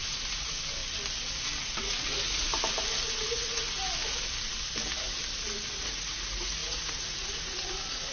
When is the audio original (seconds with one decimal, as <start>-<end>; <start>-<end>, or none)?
0.8-1.8; 2.5-3.1; 3.8-5.7